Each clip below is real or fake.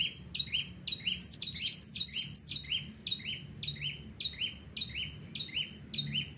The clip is real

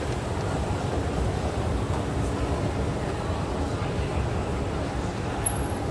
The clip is fake